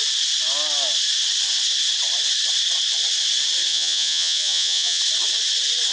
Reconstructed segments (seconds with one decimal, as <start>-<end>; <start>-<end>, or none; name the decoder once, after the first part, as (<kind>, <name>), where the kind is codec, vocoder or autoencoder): 3.7-5.0 (vocoder, Vocos)